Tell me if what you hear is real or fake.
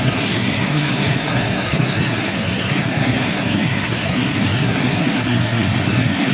fake